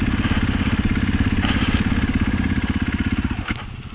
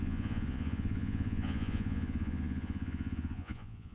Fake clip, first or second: second